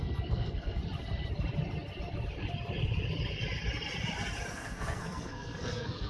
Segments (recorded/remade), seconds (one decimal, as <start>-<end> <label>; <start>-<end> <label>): 0.0-0.8 remade; 0.8-4.5 recorded; 4.5-6.1 remade